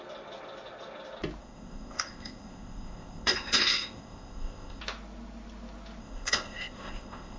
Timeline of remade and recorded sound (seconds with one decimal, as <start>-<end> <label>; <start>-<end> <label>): 0.0-1.4 recorded; 1.4-4.8 remade; 4.8-6.0 recorded; 6.0-7.4 remade